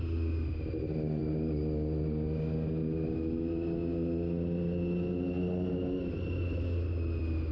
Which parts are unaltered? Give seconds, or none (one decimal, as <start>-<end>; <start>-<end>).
0.0-7.5